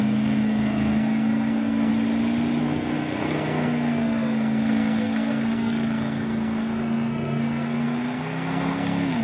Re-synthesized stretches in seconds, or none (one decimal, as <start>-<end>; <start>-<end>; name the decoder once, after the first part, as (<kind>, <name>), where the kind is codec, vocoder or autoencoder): 0.0-1.9 (codec, SNAC); 2.6-9.2